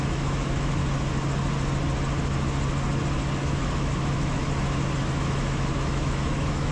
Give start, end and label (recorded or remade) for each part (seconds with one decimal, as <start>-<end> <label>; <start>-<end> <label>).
0.0-0.8 remade; 0.8-3.4 recorded; 3.4-4.4 remade; 4.4-5.0 recorded; 5.0-6.7 remade